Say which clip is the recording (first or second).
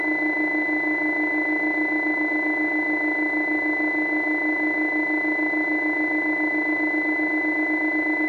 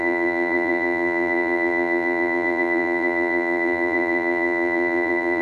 first